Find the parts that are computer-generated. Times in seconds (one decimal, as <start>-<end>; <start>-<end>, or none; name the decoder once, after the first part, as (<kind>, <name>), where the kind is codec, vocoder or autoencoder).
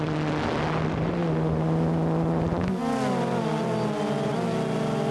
none